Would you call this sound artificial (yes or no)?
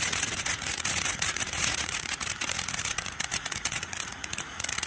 yes